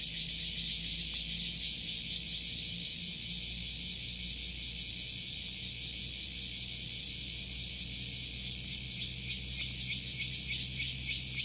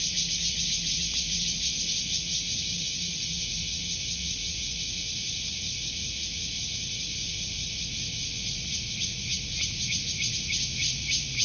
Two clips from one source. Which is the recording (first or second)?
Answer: first